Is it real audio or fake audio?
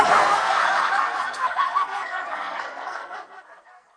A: fake